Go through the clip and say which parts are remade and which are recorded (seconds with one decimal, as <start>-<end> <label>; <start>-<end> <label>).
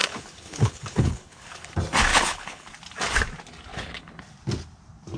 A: 0.0-1.7 remade; 1.7-2.1 recorded; 2.1-2.7 remade; 2.7-3.7 recorded; 3.7-4.2 remade; 4.2-5.2 recorded